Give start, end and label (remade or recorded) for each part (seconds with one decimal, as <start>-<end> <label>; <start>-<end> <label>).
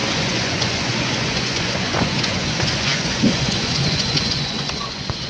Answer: 0.0-5.3 remade